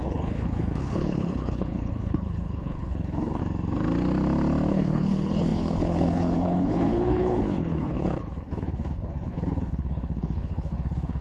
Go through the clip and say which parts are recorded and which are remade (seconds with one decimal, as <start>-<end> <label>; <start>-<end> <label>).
0.0-3.4 remade; 3.4-4.7 recorded; 4.7-11.2 remade